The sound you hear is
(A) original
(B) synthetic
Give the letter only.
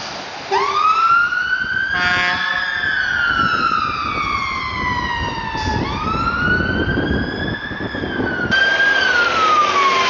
A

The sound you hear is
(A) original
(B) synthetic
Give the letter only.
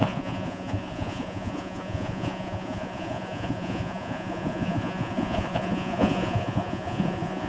B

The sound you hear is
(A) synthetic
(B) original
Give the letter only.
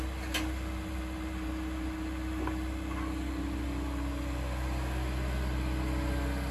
B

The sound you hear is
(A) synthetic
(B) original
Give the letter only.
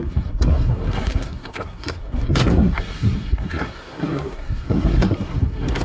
A